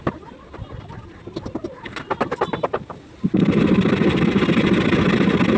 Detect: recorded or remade recorded